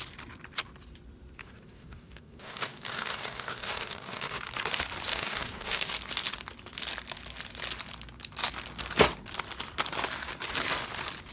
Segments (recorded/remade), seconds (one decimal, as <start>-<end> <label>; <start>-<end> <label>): 0.0-1.4 recorded; 1.4-4.4 remade; 4.4-5.1 recorded; 5.1-5.9 remade; 5.9-11.3 recorded